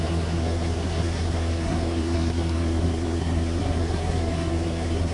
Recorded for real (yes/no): no